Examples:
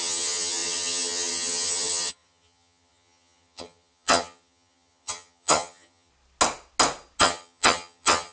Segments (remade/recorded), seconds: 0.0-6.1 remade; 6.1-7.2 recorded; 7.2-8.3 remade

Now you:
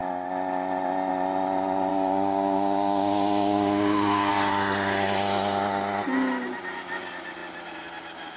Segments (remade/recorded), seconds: 0.0-1.9 recorded; 1.9-4.3 remade; 4.3-8.4 recorded

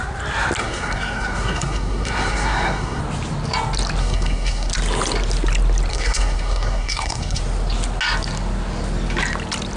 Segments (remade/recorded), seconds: 0.0-0.6 recorded; 0.6-3.0 remade; 3.0-4.0 recorded; 4.0-4.7 remade; 4.7-5.9 recorded; 5.9-7.4 remade; 7.4-9.8 recorded

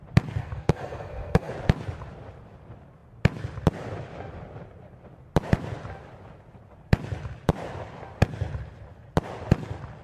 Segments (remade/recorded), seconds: 0.0-0.4 recorded; 0.4-1.5 remade; 1.5-10.0 recorded